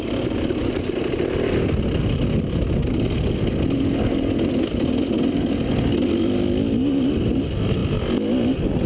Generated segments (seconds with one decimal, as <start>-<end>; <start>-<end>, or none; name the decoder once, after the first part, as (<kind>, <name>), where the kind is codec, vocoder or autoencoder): none